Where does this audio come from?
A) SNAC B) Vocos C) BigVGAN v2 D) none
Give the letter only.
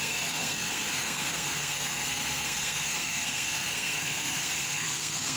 A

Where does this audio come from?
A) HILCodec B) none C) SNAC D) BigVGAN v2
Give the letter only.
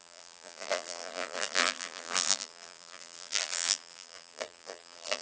D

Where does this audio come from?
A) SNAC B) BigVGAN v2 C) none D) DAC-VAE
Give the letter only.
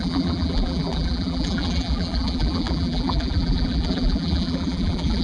B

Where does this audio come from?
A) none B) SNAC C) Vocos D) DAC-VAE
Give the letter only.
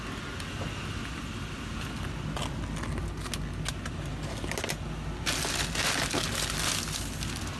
A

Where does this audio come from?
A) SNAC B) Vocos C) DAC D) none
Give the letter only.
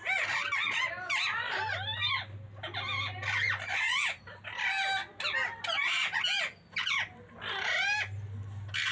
D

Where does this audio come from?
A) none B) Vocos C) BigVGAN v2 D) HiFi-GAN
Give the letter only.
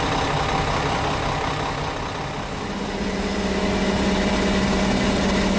A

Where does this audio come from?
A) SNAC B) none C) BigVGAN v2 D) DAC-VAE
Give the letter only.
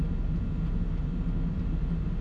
B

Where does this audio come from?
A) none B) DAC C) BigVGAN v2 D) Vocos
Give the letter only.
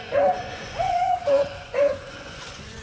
D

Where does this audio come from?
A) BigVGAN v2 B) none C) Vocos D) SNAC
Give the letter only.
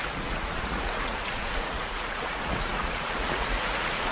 C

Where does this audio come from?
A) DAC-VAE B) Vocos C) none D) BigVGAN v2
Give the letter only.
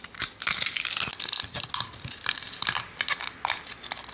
C